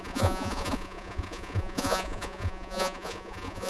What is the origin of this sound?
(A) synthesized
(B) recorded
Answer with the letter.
A